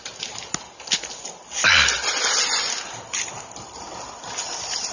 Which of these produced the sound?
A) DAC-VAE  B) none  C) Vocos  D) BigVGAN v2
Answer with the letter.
B